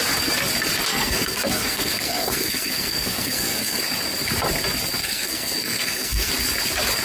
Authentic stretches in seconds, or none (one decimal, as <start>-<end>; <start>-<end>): 0.0-0.9; 3.8-5.0; 6.3-7.0